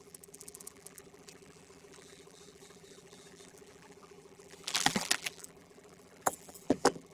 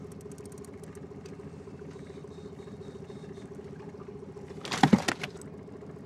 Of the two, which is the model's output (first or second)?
first